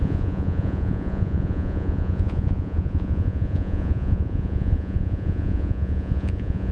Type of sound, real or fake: fake